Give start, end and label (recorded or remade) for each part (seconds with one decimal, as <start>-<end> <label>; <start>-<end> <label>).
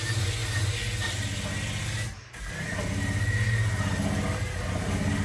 0.0-5.2 recorded